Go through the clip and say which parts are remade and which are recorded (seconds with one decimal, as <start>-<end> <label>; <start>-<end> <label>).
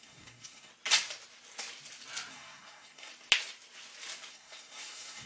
0.0-0.7 remade; 0.7-2.3 recorded; 2.3-3.1 remade; 3.1-4.3 recorded; 4.3-5.3 remade